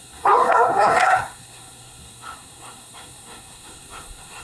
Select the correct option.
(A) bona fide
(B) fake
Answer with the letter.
B